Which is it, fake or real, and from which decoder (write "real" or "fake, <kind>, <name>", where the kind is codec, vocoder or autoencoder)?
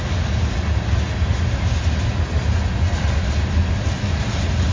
real